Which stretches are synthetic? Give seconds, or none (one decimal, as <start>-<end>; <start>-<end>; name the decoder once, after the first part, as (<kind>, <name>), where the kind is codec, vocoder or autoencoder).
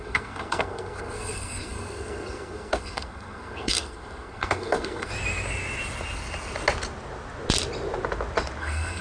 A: 0.0-5.1 (codec, SNAC); 8.6-9.0